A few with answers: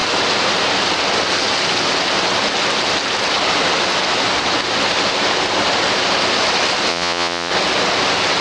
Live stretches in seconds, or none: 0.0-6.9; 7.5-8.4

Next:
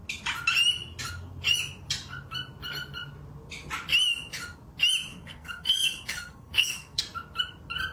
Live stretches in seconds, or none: 0.0-5.1; 7.0-7.9